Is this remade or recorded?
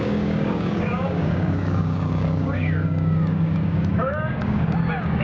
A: remade